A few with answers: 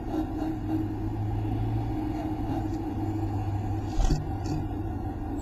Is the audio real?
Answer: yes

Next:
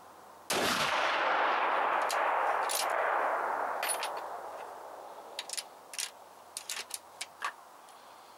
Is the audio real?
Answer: yes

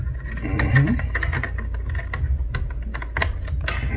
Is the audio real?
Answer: yes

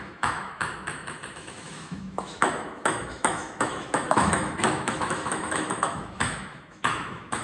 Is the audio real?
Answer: no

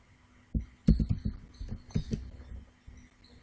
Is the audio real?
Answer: yes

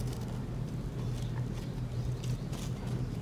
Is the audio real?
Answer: yes